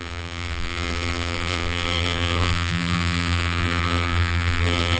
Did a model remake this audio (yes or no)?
yes